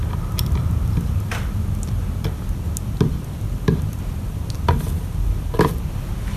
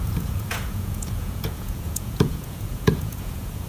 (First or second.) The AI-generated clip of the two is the second